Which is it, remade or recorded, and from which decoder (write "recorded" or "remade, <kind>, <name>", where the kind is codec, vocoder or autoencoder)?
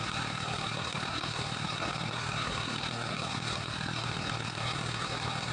remade, codec, SNAC